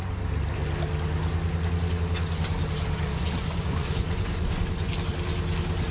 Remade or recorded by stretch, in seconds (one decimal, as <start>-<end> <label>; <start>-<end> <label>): 0.0-3.1 recorded; 3.1-4.9 remade; 4.9-5.9 recorded